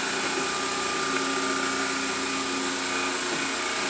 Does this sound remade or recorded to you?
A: recorded